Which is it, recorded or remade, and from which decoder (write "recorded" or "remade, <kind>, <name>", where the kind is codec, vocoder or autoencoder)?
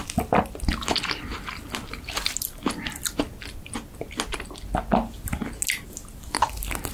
recorded